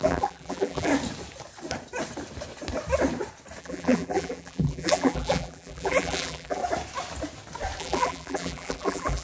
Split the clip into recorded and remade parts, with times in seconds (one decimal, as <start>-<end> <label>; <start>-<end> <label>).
0.0-0.9 remade; 0.9-3.6 recorded; 3.6-6.6 remade; 6.6-7.8 recorded; 7.8-9.2 remade